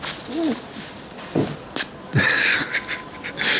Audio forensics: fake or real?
real